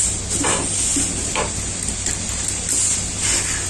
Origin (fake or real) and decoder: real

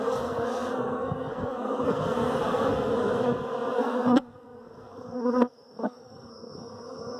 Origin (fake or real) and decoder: fake, codec, SNAC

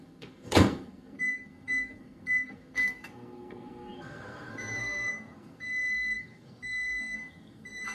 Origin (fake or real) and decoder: fake, codec, SNAC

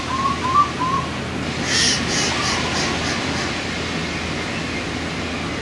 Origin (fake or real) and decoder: real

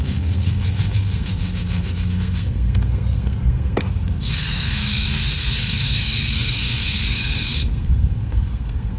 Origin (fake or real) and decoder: fake, codec, SNAC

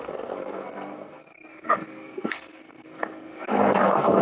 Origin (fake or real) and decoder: fake, codec, SNAC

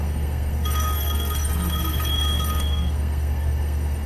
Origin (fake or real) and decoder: fake, codec, SNAC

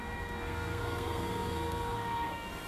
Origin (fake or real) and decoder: fake, codec, SNAC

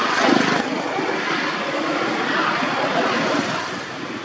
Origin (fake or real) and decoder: real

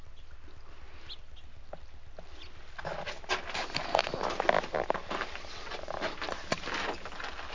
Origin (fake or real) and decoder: real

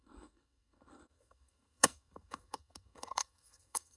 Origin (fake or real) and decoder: fake, codec, SNAC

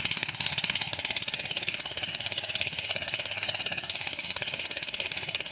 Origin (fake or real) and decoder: fake, codec, SNAC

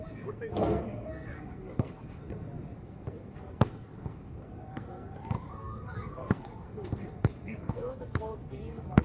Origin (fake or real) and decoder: fake, codec, SNAC